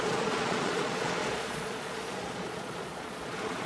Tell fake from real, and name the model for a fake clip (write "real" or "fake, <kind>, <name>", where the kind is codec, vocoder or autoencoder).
fake, vocoder, Vocos